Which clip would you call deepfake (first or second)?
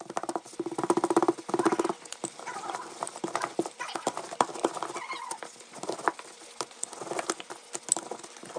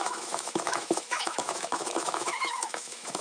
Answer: second